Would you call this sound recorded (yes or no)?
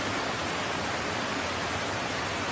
yes